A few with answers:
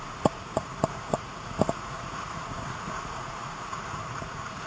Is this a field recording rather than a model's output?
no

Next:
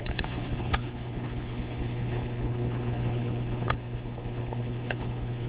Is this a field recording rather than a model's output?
no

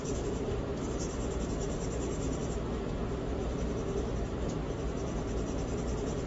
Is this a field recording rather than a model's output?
no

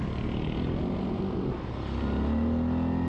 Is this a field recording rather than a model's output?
yes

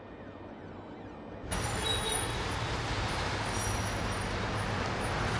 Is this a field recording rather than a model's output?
yes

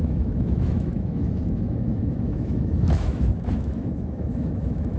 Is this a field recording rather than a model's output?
no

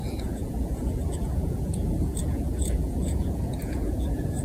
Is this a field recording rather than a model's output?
no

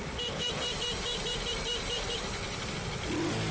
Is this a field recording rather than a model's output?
no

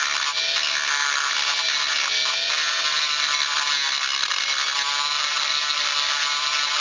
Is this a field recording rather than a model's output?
yes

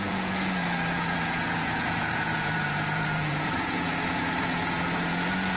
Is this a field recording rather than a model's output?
no